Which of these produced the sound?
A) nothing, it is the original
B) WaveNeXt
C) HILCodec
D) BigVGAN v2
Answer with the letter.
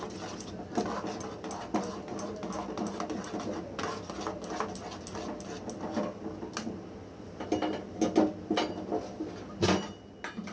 A